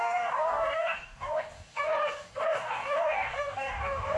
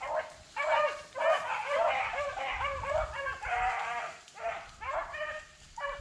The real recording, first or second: second